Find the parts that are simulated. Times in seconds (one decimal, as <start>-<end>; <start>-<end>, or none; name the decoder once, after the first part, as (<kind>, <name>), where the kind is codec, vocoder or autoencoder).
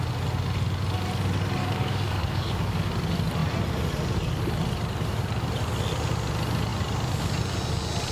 1.6-2.9 (codec, DAC)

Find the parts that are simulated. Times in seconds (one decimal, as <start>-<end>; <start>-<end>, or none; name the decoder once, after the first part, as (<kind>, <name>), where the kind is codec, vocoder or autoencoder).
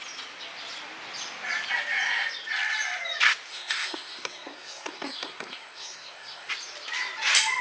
3.5-6.5 (codec, SNAC)